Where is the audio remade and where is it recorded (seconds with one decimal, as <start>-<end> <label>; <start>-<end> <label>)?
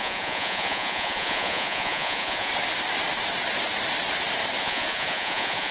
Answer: 0.0-2.5 remade; 2.5-4.6 recorded; 4.6-5.7 remade